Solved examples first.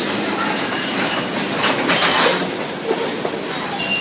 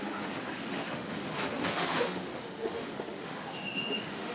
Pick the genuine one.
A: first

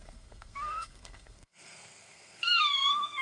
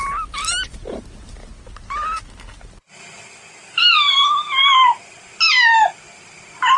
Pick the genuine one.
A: second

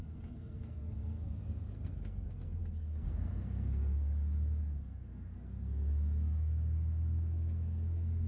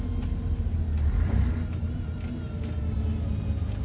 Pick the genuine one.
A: second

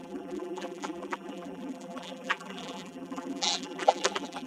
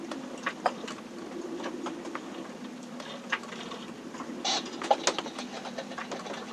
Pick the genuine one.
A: second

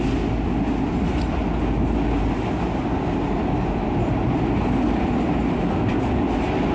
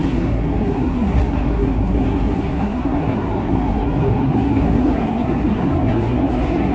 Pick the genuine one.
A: first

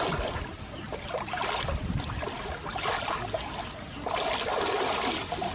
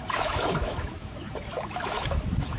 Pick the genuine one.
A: first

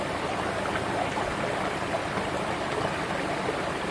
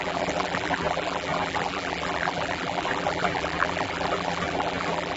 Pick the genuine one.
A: first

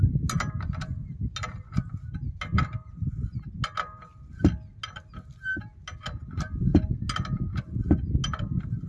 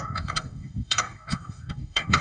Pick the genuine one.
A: first